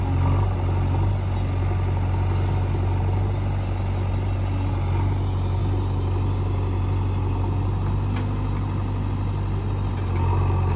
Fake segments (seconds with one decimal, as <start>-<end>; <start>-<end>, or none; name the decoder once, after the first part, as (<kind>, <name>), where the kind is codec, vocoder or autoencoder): none